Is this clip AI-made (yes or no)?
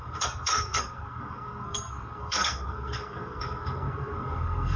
yes